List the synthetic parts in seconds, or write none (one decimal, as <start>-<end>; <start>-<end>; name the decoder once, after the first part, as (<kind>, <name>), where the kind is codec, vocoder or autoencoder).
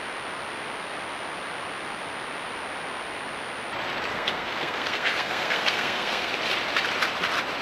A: 4.1-6.3 (codec, SNAC)